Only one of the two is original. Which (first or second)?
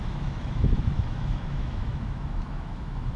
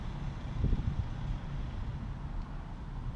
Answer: second